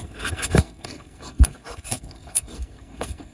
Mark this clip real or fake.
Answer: fake